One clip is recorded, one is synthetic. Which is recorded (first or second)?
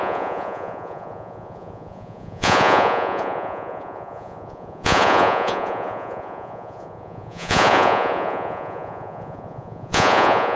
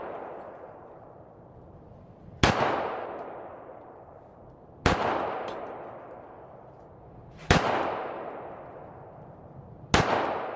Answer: second